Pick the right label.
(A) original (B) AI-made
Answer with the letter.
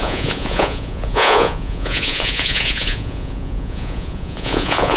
B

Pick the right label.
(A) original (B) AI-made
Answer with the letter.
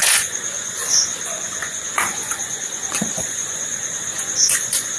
B